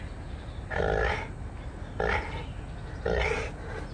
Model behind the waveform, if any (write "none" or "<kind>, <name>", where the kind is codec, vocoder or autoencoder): none